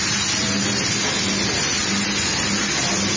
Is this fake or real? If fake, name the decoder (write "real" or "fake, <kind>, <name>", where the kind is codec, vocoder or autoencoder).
fake, vocoder, BigVGAN v2